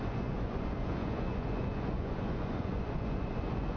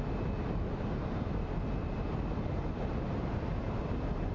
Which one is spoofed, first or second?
first